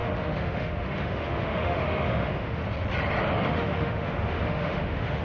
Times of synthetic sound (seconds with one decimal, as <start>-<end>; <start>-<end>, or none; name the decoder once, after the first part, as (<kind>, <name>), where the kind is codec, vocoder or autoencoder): 0.0-2.6 (autoencoder, DAC-VAE); 3.5-5.2